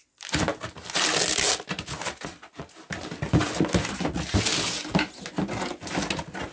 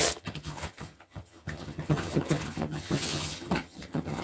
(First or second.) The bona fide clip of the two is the first